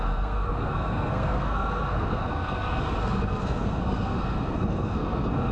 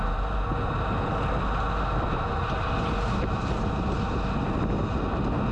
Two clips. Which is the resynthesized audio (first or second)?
first